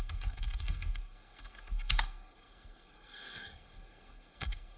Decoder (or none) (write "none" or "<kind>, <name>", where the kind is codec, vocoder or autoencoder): codec, SNAC